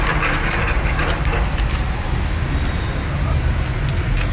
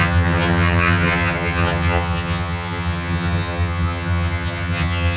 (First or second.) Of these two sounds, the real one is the first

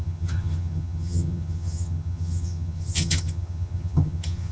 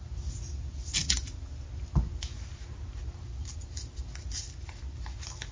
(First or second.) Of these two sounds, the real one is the second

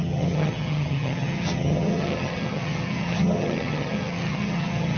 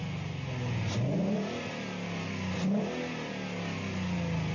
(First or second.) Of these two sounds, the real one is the second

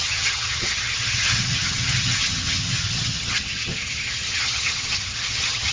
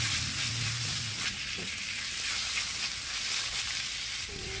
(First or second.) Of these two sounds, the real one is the second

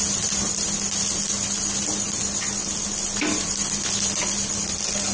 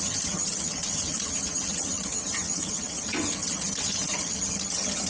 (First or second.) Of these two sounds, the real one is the first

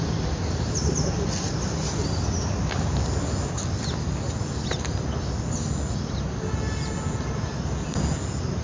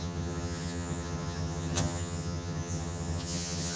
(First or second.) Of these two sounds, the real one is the first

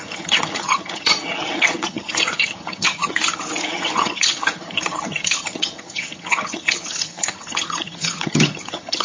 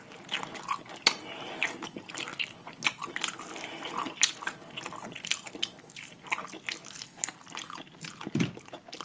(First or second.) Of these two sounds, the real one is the second